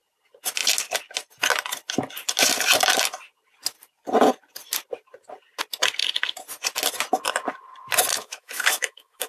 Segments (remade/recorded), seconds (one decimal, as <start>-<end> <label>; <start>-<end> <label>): 0.0-8.1 recorded; 8.1-9.3 remade